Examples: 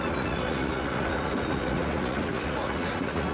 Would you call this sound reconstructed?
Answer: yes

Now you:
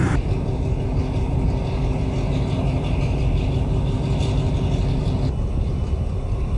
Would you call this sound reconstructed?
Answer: no